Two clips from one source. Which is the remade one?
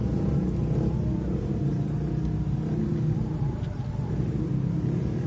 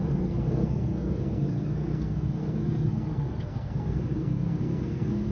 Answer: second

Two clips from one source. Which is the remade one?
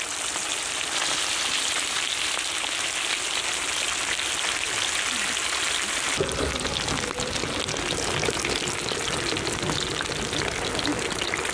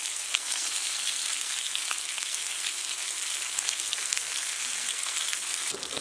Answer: second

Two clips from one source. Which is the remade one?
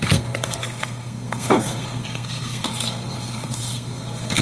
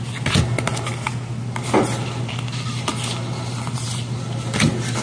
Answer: first